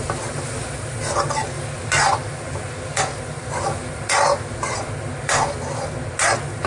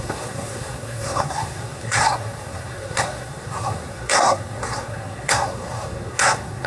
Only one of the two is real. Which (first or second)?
first